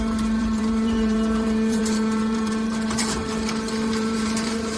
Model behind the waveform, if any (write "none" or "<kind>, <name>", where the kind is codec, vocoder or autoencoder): vocoder, BigVGAN v2